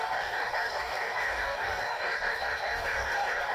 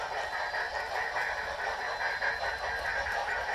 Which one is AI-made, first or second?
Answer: first